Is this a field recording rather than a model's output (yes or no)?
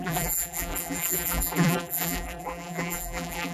no